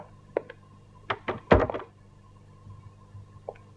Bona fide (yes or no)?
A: yes